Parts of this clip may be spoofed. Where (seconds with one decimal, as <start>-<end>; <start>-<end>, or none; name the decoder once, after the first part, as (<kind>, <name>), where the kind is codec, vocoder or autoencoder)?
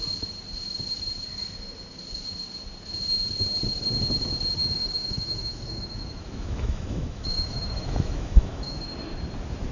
4.6-8.8 (autoencoder, DAC-VAE)